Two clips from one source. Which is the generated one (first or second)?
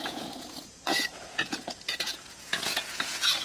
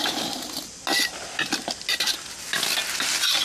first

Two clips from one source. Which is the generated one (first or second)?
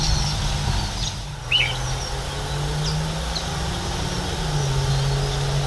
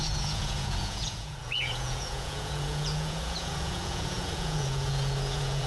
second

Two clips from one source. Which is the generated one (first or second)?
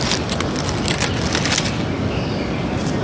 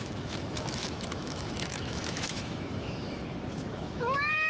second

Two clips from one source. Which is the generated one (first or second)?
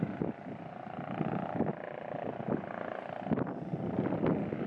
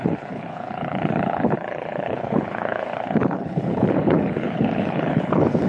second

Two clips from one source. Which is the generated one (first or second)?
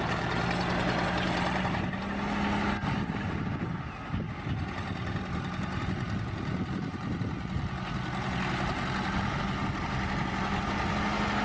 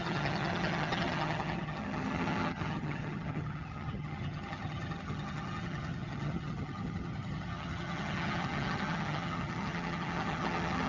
second